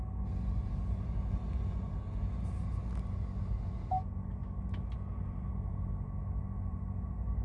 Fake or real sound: real